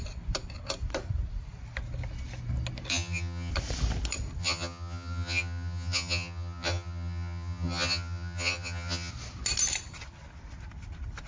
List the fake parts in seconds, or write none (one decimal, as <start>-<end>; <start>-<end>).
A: 2.9-3.5; 4.4-9.1